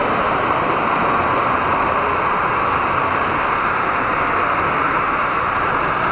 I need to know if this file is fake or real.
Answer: real